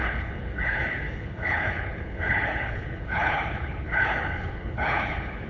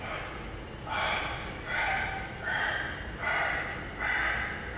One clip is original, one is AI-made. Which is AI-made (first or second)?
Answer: first